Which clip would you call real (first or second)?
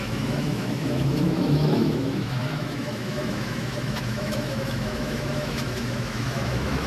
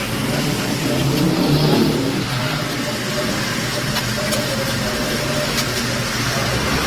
second